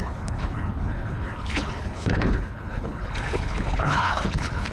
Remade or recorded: remade